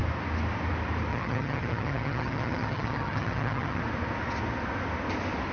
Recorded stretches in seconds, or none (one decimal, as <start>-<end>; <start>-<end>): 0.0-1.1; 3.8-5.5